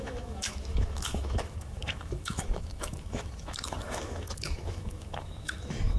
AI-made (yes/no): yes